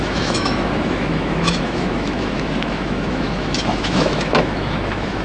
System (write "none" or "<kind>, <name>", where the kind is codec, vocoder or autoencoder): autoencoder, DAC-VAE